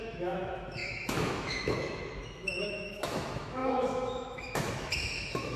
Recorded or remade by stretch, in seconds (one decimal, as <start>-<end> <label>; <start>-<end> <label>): 0.0-5.6 remade